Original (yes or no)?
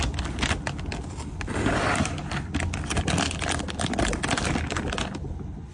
yes